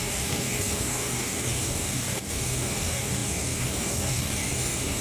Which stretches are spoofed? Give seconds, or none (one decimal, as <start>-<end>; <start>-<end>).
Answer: 0.0-5.0